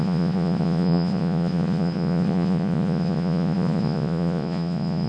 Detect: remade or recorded remade